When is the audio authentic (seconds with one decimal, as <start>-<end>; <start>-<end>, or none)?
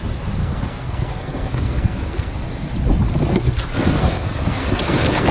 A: 0.0-0.4; 2.3-3.3